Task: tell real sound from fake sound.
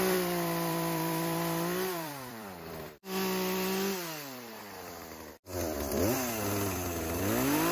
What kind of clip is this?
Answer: fake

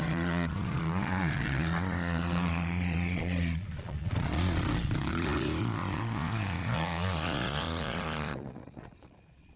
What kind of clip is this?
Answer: fake